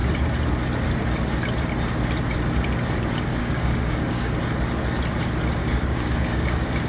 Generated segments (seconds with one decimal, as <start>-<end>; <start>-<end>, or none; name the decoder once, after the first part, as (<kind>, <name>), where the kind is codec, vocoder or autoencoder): 3.4-4.4 (codec, DAC); 5.6-6.9